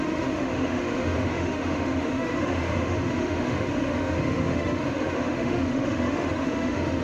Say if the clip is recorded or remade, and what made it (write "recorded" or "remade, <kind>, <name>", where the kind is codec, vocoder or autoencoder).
remade, autoencoder, DAC-VAE